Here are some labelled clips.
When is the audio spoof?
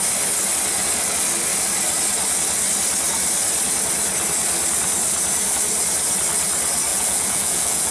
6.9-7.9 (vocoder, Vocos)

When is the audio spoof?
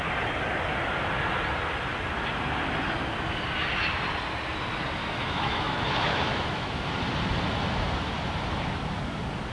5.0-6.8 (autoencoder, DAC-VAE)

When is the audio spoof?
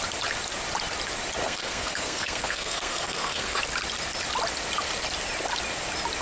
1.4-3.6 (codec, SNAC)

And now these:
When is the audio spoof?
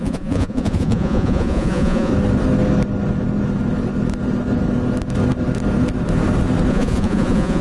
0.0-2.1 (vocoder, Vocos); 6.7-7.6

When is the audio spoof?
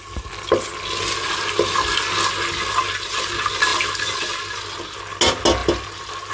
none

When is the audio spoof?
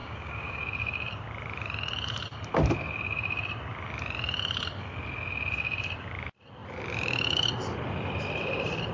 0.0-0.6 (codec, DAC)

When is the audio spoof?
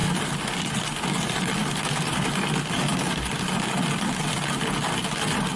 1.6-2.4 (vocoder, BigVGAN v2)